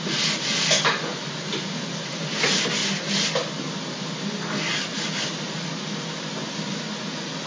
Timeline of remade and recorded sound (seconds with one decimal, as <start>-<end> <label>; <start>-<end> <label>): 0.0-1.1 recorded; 1.1-2.4 remade; 2.4-4.9 recorded; 4.9-5.7 remade; 5.7-7.5 recorded